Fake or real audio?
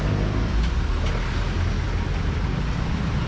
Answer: real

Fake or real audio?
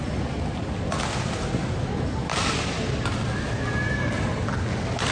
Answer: real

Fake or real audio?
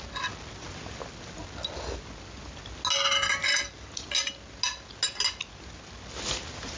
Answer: real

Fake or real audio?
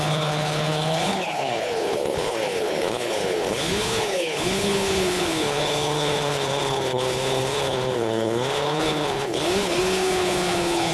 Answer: fake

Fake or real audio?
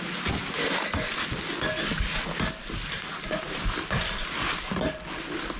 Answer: real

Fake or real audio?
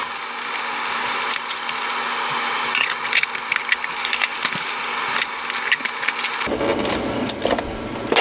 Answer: real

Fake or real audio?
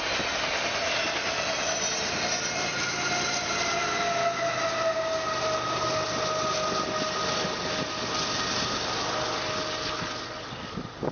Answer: real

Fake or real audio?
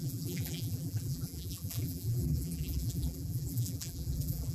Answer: fake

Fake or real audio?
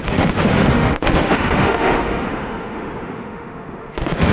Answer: fake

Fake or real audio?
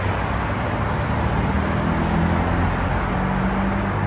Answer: real